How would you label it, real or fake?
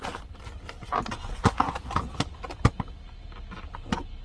real